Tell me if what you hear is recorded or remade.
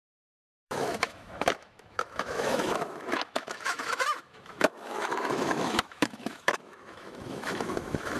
remade